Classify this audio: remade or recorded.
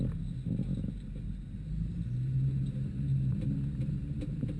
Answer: recorded